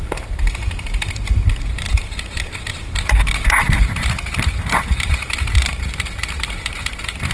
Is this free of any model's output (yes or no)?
no